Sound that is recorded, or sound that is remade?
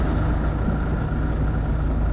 recorded